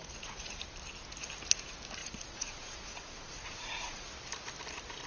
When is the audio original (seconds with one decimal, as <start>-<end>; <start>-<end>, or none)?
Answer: 0.6-2.0; 4.1-5.1